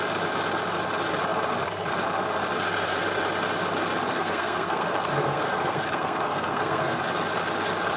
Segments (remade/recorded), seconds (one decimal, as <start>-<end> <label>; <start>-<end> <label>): 0.0-4.1 recorded; 4.1-7.0 remade; 7.0-8.0 recorded